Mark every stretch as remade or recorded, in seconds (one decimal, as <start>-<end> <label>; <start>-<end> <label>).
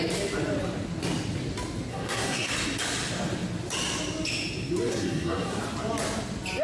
0.0-1.9 recorded; 1.9-2.5 remade; 2.5-4.9 recorded; 4.9-5.6 remade; 5.6-6.6 recorded